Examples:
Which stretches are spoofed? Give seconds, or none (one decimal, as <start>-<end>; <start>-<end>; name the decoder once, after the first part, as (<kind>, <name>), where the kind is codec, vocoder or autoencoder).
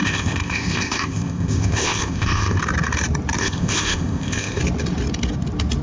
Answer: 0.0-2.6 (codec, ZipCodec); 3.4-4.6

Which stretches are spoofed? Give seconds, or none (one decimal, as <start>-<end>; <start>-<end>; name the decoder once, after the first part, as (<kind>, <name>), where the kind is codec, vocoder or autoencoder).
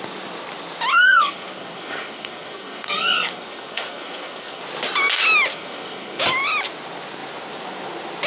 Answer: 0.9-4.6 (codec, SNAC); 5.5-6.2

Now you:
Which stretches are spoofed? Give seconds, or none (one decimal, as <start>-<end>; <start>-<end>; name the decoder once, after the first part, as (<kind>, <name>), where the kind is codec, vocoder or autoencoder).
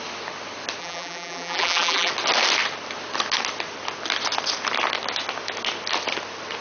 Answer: 0.8-2.1 (vocoder, BigVGAN v2)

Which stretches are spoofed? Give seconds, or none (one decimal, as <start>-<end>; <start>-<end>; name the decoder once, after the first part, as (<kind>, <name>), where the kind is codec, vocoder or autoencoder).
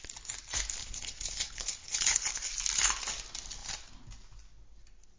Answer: 0.8-2.5 (codec, HILCodec)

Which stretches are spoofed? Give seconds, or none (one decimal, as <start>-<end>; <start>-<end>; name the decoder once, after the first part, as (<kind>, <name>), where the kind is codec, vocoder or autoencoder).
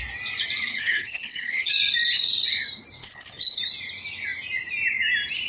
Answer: 0.7-1.7 (codec, HILCodec); 3.0-3.6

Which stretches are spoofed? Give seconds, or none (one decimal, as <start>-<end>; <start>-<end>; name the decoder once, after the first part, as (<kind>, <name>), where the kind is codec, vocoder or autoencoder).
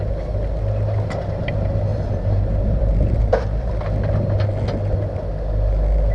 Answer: 1.9-3.7 (vocoder, BigVGAN v2)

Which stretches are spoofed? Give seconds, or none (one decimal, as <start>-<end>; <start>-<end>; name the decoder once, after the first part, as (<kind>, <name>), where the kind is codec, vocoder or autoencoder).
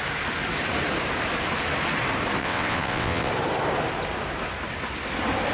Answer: 2.4-3.3 (vocoder, WaveNeXt)